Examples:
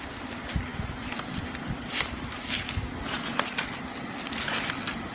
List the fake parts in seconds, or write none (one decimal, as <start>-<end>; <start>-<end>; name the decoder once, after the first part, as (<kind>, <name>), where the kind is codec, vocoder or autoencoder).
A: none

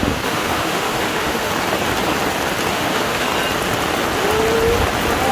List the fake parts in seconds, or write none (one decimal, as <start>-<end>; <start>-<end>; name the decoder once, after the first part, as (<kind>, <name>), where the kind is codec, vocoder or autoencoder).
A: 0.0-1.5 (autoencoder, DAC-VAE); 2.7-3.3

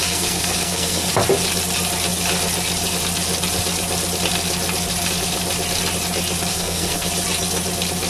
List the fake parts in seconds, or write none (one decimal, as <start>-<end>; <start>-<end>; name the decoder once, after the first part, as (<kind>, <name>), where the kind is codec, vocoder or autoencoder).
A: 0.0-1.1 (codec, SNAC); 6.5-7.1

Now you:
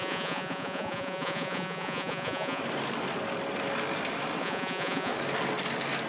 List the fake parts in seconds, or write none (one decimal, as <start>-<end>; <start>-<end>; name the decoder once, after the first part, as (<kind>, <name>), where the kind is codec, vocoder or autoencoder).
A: 0.0-2.6 (vocoder, Vocos); 4.4-5.1